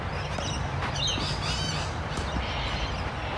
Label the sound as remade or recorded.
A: recorded